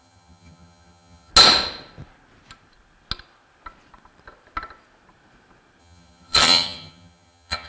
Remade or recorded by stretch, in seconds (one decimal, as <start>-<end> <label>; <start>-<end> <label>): 0.0-1.3 remade; 1.3-5.8 recorded; 5.8-7.7 remade